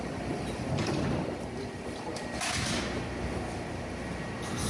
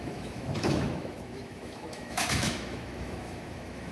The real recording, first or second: first